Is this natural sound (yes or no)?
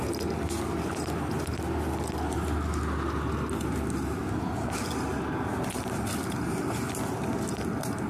yes